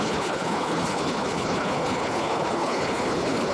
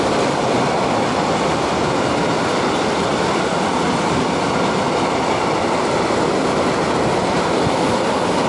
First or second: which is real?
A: second